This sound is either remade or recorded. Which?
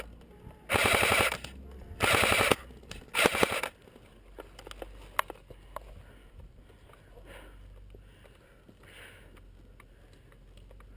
recorded